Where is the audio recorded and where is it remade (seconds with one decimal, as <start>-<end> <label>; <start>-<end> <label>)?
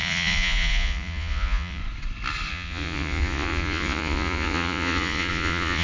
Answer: 0.0-1.8 remade; 1.8-2.5 recorded; 2.5-5.8 remade